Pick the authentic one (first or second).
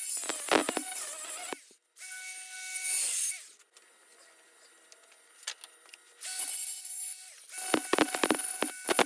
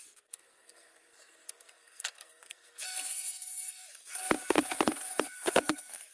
first